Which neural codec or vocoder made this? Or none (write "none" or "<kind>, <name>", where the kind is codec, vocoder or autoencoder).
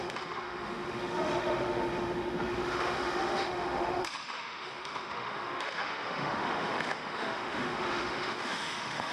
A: autoencoder, DAC-VAE